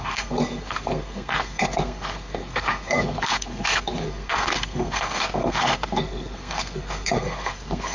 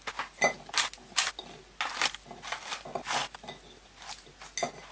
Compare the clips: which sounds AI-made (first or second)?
first